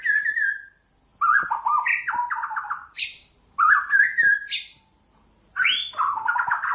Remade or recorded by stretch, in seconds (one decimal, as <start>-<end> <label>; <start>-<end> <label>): 0.0-1.1 recorded; 1.1-5.1 remade; 5.1-6.7 recorded